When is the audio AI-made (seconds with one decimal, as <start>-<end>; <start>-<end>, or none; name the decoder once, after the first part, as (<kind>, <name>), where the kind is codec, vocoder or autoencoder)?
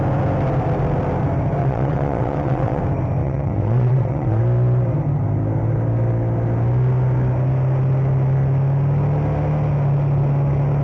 1.6-2.8 (vocoder, WaveNeXt); 3.2-4.4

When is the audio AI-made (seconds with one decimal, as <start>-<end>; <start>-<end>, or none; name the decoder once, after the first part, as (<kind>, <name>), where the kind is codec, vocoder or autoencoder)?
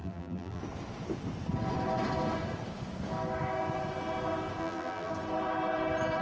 0.0-0.6 (vocoder, BigVGAN v2); 4.6-5.1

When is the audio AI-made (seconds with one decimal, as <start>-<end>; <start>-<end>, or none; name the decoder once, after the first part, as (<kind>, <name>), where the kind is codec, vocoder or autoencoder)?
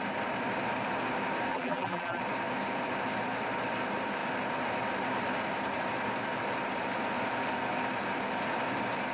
1.5-2.2 (vocoder, BigVGAN v2)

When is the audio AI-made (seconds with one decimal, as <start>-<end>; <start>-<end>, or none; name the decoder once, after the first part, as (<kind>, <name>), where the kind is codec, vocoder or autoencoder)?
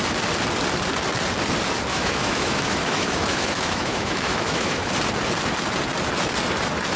1.9-4.9 (autoencoder, DAC-VAE)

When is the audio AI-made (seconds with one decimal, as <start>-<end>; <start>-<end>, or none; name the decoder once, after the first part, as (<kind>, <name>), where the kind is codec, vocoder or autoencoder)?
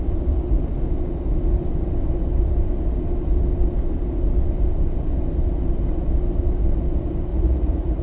7.3-8.0 (vocoder, Vocos)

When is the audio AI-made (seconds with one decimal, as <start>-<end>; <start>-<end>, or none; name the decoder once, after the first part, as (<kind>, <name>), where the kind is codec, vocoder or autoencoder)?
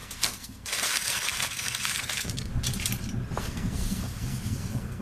0.0-2.5 (codec, SNAC); 3.4-5.0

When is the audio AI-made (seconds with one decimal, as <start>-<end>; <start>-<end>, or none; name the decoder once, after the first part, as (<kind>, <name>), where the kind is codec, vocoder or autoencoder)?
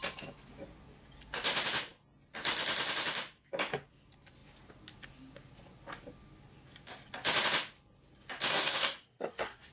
8.5-9.7 (codec, SNAC)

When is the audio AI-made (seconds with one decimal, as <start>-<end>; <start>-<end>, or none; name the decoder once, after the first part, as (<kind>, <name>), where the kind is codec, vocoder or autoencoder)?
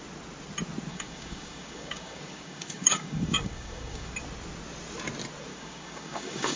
0.9-4.1 (codec, DAC); 5.5-6.6